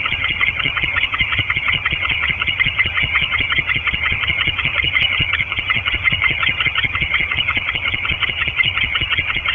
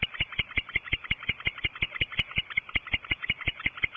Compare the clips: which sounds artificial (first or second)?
first